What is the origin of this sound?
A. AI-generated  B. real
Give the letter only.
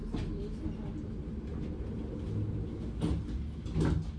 B